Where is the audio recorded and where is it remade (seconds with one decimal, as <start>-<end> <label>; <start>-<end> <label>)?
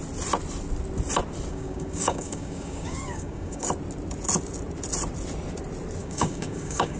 0.0-1.5 recorded; 1.5-3.7 remade; 3.7-6.0 recorded; 6.0-7.0 remade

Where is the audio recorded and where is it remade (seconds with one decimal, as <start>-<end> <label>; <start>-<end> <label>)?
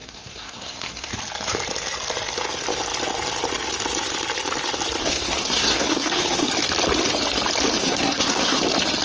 0.0-1.1 remade; 1.1-5.0 recorded; 5.0-6.5 remade; 6.5-7.8 recorded; 7.8-8.6 remade; 8.6-9.0 recorded